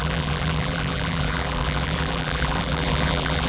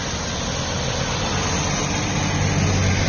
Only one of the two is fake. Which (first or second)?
first